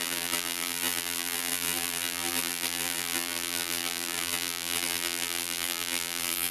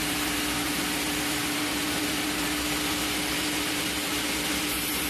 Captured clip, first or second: second